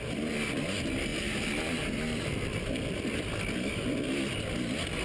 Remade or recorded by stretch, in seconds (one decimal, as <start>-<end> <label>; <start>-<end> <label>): 0.0-1.1 recorded; 1.1-4.1 remade; 4.1-5.0 recorded